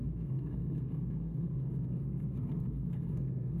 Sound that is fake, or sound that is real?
fake